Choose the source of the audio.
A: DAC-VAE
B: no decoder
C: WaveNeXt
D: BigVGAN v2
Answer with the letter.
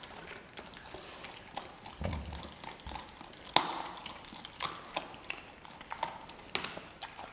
B